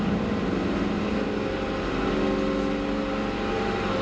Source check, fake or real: real